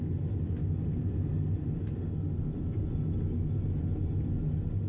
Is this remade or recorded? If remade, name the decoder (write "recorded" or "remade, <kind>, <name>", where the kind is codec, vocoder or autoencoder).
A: recorded